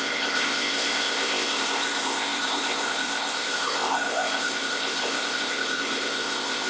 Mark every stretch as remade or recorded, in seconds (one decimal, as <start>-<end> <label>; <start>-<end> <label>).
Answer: 0.0-6.7 remade

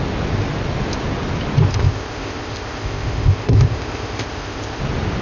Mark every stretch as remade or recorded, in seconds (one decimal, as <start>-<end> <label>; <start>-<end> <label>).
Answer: 0.0-1.7 recorded; 1.7-4.8 remade; 4.8-5.2 recorded

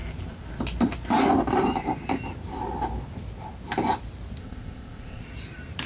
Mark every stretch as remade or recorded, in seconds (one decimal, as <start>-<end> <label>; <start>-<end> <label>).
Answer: 0.0-4.4 recorded; 4.4-5.2 remade; 5.2-5.9 recorded